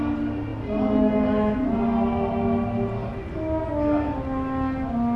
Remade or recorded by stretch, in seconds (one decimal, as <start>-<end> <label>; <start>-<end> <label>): 0.0-5.2 recorded